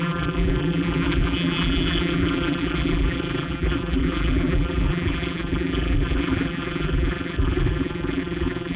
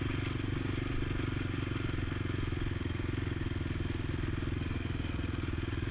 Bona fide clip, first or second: second